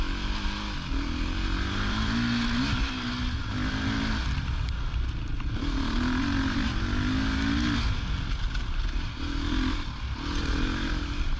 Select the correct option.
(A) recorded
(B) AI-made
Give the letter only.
A